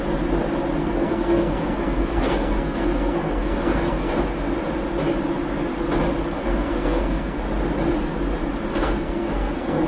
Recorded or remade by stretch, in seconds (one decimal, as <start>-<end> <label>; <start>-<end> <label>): 0.0-0.8 recorded; 0.8-4.2 remade; 4.2-6.4 recorded; 6.4-7.4 remade; 7.4-8.7 recorded; 8.7-9.9 remade